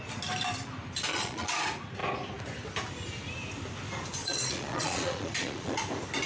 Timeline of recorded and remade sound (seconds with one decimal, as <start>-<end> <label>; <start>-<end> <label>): 0.0-1.1 recorded; 1.1-1.6 remade; 1.6-4.2 recorded; 4.2-5.8 remade; 5.8-6.3 recorded